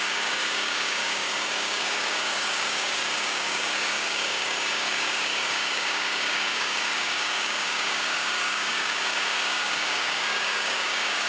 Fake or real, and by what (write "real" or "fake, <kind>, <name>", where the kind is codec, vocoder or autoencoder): fake, codec, DAC